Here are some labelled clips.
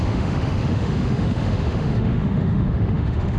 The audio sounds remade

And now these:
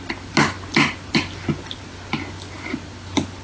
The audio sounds recorded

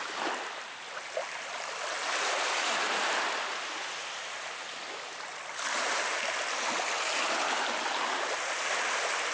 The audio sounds recorded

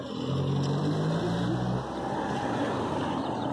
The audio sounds recorded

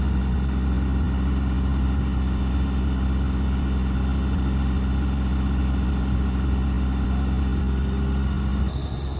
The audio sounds recorded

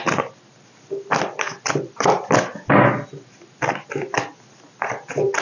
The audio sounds recorded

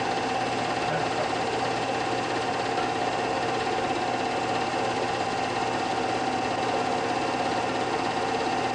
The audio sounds recorded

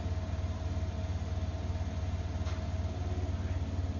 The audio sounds recorded